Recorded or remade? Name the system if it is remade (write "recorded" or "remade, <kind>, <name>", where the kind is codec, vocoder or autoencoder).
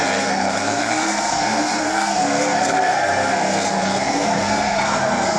remade, codec, SNAC